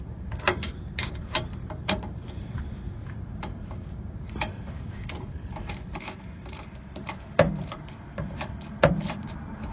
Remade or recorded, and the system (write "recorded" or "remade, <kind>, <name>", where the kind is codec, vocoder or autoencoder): remade, vocoder, BigVGAN v2